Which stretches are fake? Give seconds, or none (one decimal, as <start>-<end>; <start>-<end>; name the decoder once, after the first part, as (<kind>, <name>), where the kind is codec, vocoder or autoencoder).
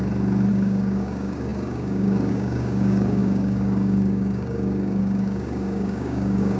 0.5-6.6 (codec, DAC)